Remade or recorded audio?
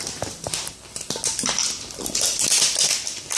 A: recorded